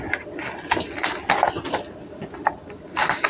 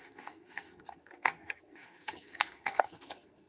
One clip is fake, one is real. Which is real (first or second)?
first